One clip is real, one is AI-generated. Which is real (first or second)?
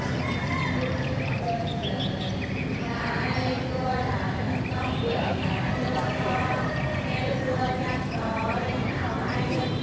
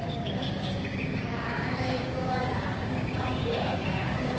first